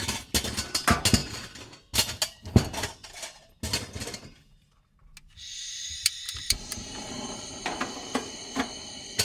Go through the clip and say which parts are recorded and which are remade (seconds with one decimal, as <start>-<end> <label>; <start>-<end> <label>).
0.0-5.5 recorded; 5.5-7.5 remade; 7.5-9.2 recorded